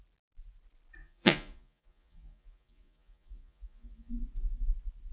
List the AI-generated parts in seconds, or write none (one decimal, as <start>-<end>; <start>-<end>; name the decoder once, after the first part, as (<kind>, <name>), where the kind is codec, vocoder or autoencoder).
1.0-4.1 (vocoder, Vocos)